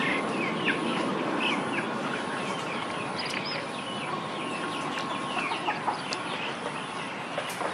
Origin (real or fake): real